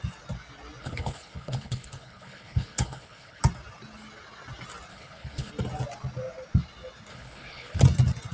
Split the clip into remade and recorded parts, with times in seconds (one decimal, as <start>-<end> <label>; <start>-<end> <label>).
0.0-0.8 recorded; 0.8-3.4 remade; 3.4-4.9 recorded; 4.9-5.5 remade; 5.5-7.1 recorded; 7.1-7.8 remade; 7.8-8.3 recorded